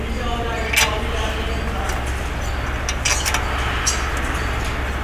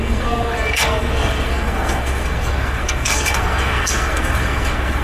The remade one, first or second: second